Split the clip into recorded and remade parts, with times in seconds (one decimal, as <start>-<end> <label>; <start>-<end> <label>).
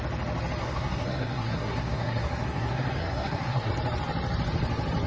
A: 0.0-0.6 recorded; 0.6-3.7 remade; 3.7-5.1 recorded